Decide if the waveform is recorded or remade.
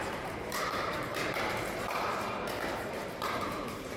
remade